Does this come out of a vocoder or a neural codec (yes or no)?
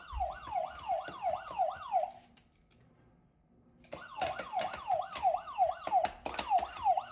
no